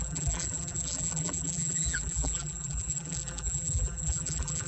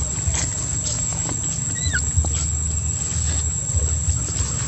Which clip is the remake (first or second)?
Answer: first